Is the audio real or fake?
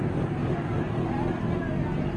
real